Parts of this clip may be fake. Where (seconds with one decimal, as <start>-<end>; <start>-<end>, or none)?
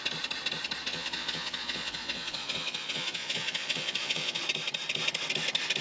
0.9-4.4